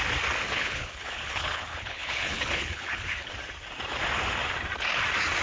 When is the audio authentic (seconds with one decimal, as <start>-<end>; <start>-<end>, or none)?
0.0-0.5; 3.3-5.4